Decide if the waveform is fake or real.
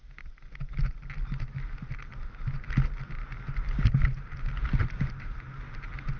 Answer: real